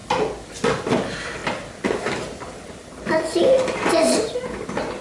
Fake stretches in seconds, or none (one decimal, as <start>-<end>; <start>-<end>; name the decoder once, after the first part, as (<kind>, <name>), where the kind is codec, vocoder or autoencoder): 1.4-4.4 (vocoder, BigVGAN v2)